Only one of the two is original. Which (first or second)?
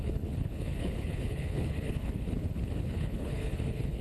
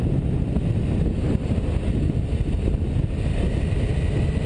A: second